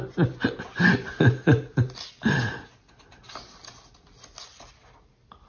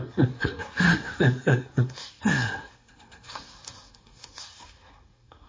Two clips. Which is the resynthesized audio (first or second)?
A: second